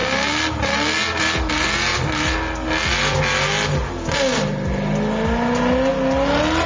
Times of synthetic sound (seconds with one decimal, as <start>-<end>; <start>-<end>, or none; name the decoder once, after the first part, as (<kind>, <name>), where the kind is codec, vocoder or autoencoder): none